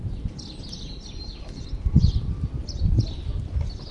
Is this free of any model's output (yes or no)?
yes